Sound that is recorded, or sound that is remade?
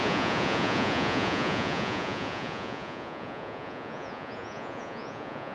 remade